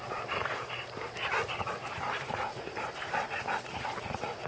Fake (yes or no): yes